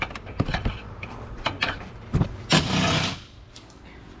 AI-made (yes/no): no